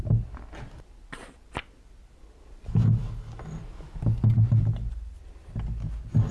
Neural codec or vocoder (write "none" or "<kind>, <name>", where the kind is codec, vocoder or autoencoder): none